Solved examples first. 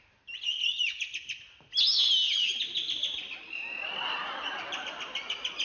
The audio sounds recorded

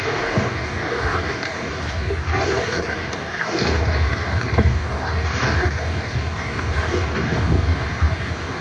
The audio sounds remade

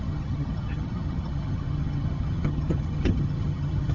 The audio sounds remade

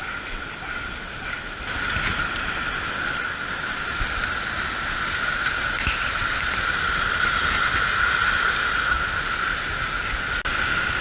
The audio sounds recorded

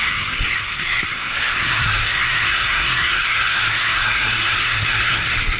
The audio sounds remade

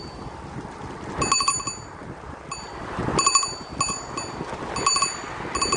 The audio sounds recorded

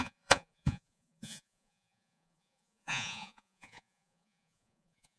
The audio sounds remade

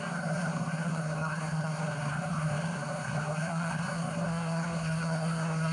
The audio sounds remade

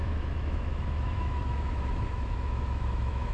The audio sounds remade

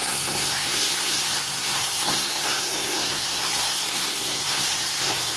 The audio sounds remade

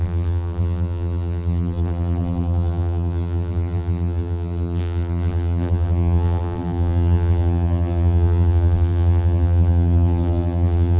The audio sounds remade